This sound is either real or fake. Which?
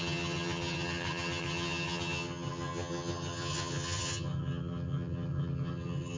fake